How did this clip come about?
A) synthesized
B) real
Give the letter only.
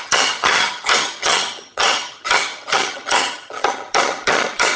A